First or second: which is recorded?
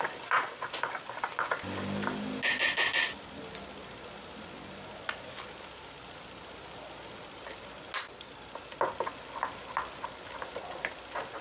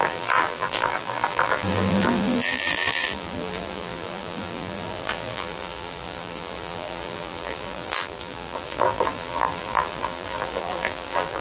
first